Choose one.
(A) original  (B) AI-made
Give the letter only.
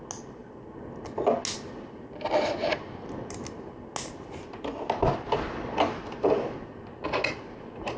A